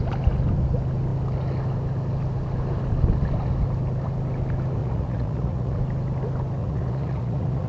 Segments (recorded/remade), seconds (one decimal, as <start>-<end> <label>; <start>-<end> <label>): 0.0-4.8 recorded; 4.8-5.8 remade; 5.8-6.6 recorded; 6.6-7.7 remade